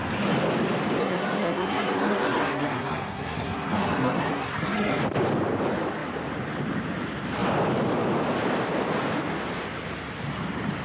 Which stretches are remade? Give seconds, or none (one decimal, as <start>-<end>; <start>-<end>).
1.0-5.0